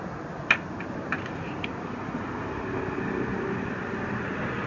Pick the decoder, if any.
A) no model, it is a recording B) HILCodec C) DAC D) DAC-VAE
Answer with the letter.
A